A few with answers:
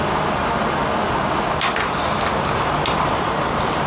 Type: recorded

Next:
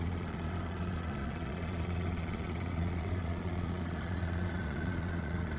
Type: remade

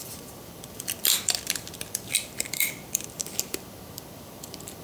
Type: remade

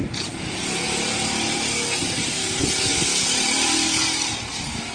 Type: recorded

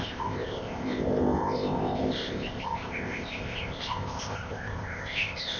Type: remade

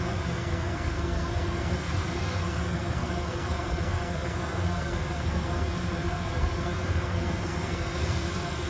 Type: remade